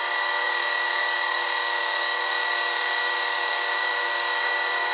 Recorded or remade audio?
remade